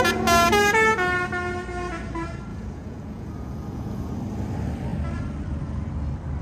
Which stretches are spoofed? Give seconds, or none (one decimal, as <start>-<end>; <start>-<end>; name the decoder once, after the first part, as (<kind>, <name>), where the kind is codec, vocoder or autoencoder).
2.5-4.1 (vocoder, Vocos)

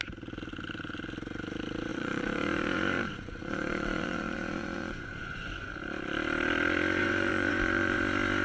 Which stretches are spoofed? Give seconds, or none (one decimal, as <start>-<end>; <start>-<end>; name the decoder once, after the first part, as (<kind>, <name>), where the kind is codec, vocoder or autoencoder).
1.9-5.7 (vocoder, Vocos); 7.0-8.0

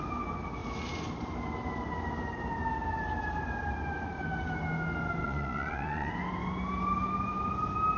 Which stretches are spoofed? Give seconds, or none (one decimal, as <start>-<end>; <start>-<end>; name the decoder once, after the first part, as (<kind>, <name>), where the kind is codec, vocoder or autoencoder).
5.2-6.1 (vocoder, Vocos)

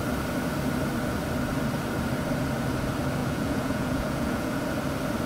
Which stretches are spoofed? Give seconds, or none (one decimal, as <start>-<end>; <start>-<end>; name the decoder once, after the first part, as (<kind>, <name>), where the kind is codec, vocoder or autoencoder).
3.2-4.6 (vocoder, Vocos)

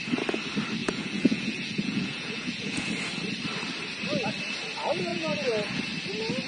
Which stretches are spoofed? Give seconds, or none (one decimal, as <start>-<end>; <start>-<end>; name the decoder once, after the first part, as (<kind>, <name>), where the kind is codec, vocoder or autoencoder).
0.8-2.9 (vocoder, Vocos); 5.1-5.8

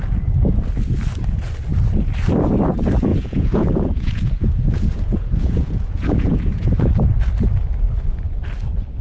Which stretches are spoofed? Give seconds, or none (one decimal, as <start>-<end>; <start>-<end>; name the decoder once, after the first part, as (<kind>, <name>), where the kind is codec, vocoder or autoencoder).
3.1-6.9 (vocoder, Vocos)